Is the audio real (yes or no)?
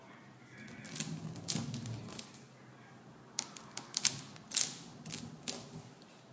yes